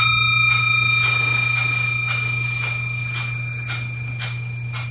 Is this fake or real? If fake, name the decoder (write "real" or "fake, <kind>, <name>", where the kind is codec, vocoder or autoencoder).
real